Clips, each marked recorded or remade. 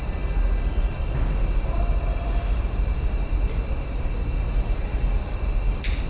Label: recorded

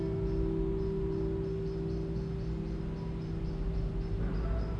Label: recorded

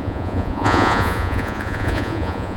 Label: remade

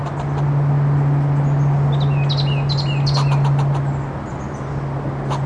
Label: recorded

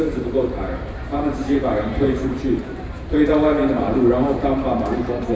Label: remade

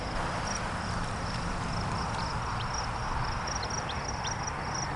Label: recorded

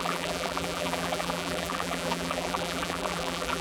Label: remade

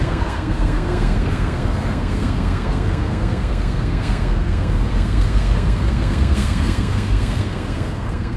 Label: remade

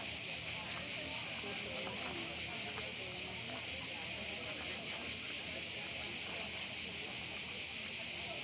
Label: recorded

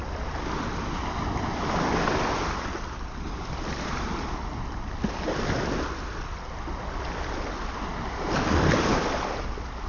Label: recorded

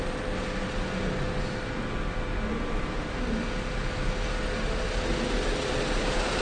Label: recorded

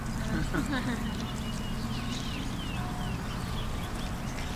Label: recorded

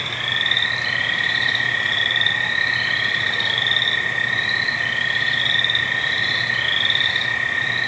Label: recorded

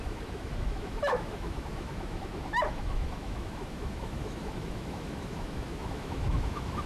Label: remade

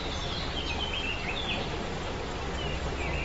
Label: recorded